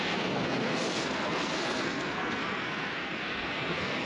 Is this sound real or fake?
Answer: fake